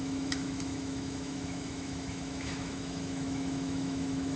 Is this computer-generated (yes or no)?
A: yes